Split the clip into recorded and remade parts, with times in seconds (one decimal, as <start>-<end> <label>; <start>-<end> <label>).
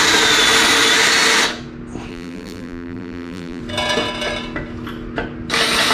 0.0-2.1 recorded; 2.1-3.6 remade; 3.6-5.9 recorded